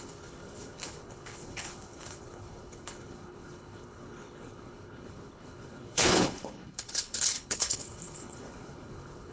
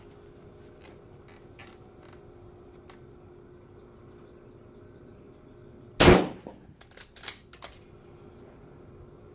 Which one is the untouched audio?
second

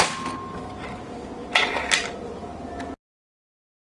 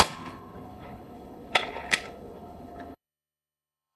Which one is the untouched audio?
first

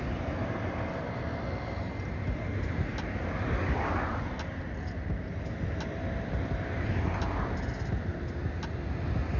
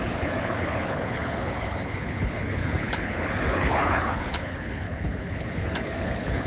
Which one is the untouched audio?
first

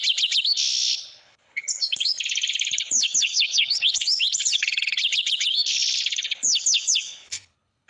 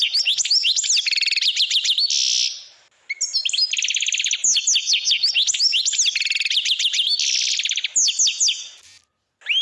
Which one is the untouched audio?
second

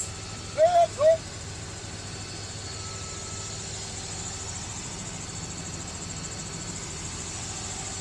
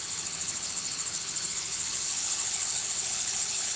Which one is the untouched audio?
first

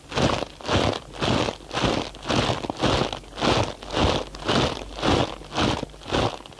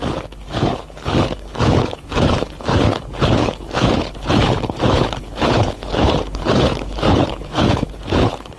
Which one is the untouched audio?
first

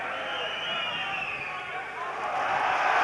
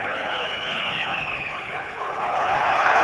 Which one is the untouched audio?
first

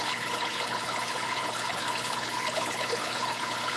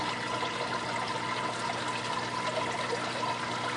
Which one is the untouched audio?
second